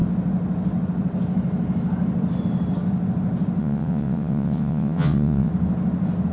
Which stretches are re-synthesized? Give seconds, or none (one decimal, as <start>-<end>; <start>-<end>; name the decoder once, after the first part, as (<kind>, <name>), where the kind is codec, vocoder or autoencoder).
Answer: 3.6-5.5 (vocoder, WaveNeXt)